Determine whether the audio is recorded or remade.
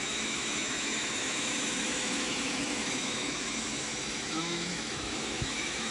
remade